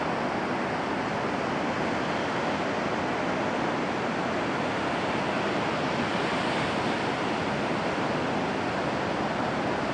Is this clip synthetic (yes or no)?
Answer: no